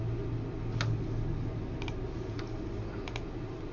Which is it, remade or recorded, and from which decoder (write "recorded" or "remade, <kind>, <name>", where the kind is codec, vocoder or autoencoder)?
recorded